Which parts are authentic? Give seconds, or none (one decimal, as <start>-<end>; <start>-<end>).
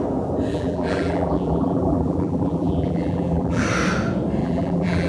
0.0-0.5; 3.6-4.4